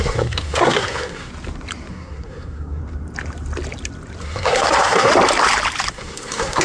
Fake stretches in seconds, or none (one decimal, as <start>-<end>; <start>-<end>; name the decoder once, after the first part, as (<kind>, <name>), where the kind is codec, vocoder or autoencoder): 0.0-1.3 (codec, SNAC); 1.9-2.8; 4.2-5.1; 5.9-6.6